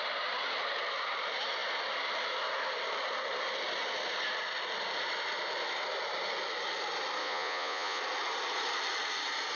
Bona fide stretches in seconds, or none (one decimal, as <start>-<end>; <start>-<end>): 0.0-7.2; 8.0-9.6